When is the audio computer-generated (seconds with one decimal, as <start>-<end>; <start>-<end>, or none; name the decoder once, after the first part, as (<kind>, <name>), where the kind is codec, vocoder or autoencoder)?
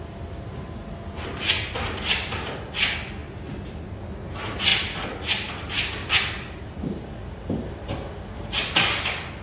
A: none